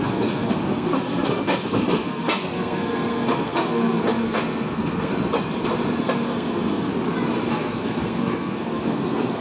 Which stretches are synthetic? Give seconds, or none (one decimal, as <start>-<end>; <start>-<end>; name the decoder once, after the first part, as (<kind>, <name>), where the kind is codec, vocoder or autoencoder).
0.0-5.1 (codec, SNAC); 6.0-6.9; 7.5-9.4